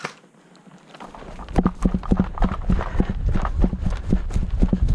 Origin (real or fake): real